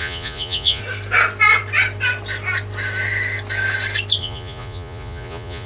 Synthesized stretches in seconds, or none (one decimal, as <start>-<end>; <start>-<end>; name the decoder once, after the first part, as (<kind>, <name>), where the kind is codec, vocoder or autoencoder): 0.0-0.8 (vocoder, Vocos); 4.2-5.7